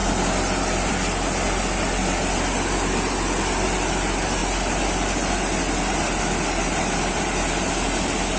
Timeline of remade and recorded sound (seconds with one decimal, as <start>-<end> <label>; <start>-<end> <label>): 0.0-8.4 recorded